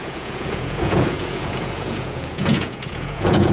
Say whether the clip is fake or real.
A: fake